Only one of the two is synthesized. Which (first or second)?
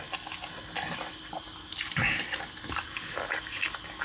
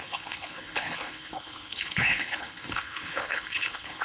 second